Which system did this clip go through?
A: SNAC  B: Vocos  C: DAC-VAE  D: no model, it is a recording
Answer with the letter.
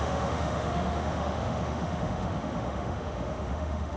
C